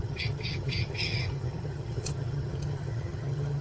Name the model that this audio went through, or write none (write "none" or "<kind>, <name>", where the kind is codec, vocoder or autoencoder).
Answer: vocoder, HiFi-GAN